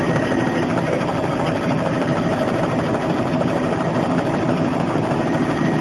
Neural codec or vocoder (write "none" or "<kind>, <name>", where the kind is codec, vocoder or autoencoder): vocoder, BigVGAN v2